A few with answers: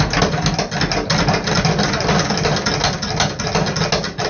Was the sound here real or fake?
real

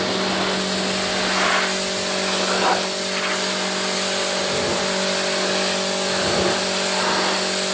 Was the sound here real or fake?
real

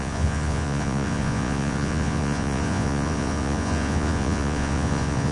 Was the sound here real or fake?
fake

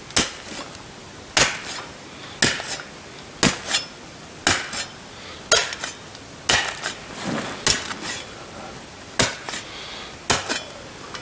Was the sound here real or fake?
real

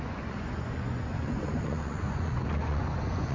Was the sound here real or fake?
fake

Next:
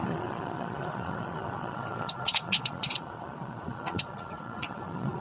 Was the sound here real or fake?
fake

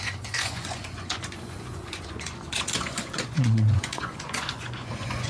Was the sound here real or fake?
fake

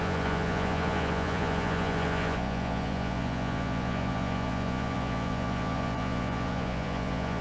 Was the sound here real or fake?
fake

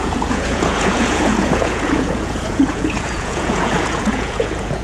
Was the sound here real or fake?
fake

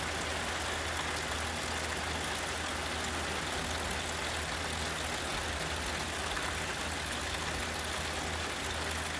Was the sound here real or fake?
real